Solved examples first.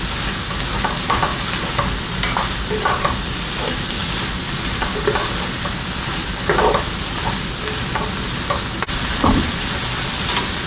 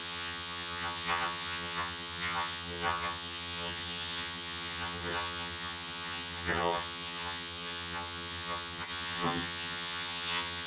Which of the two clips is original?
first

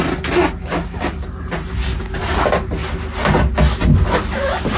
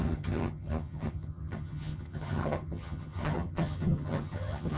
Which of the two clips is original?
first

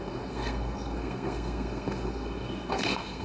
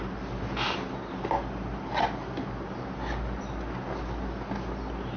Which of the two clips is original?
second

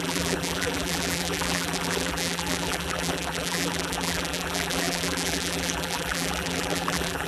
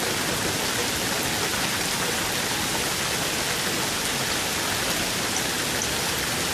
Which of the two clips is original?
second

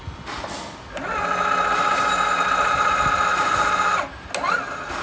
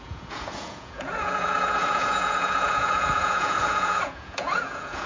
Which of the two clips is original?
first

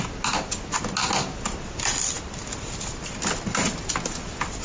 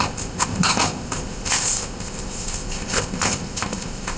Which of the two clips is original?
first